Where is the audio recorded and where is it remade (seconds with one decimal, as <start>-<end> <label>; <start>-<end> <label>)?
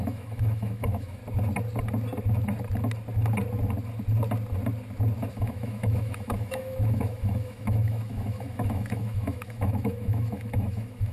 0.0-1.2 remade; 1.2-5.3 recorded; 5.3-11.1 remade